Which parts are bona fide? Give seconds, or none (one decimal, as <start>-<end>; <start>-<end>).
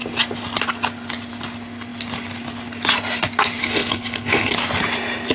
0.0-3.6; 4.5-5.3